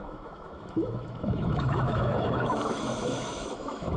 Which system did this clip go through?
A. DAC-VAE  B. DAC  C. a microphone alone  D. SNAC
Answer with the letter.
A